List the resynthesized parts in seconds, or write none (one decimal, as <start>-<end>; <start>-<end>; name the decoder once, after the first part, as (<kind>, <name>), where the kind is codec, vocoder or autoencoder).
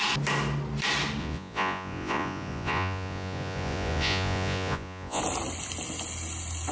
1.2-5.2 (vocoder, Vocos)